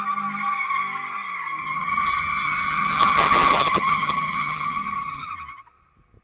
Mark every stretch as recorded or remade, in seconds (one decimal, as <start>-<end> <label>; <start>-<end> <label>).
0.0-1.6 recorded; 1.6-5.3 remade; 5.3-6.2 recorded